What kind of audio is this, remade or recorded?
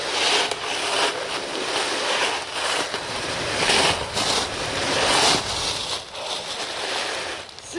recorded